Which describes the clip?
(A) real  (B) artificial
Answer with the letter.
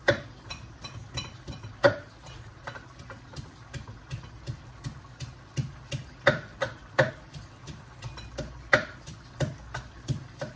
A